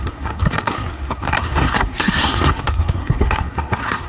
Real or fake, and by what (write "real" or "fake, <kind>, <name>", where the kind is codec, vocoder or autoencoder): fake, codec, SNAC